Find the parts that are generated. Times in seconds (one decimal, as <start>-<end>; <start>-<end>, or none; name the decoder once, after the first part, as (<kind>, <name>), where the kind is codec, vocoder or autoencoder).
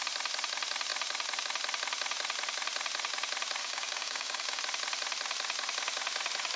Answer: 3.6-4.6 (codec, DAC)